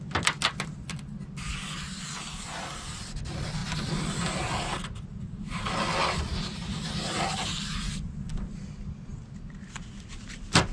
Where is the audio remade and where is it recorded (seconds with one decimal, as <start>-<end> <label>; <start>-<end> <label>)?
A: 0.0-10.7 recorded